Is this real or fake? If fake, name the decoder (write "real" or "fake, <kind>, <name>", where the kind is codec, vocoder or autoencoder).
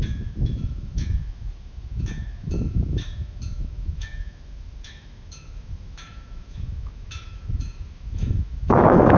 fake, autoencoder, DAC-VAE